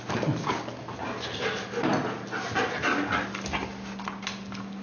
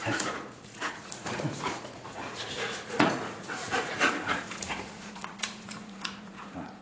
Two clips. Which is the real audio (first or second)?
first